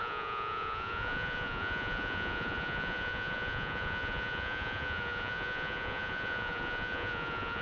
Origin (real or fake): fake